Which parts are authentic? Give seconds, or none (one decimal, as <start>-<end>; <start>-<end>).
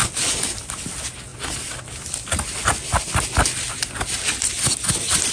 0.0-5.3